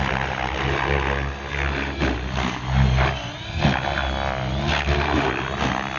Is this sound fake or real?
real